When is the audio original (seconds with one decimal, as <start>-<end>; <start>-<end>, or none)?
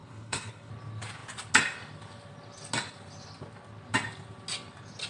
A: 0.7-5.1